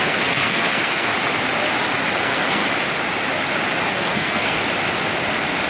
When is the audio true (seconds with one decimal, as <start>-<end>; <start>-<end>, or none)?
1.1-2.2; 2.6-3.9; 4.6-5.7